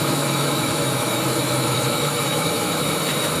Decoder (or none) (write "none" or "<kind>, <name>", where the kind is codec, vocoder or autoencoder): autoencoder, DAC-VAE